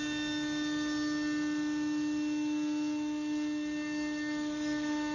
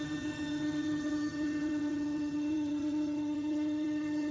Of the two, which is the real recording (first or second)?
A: first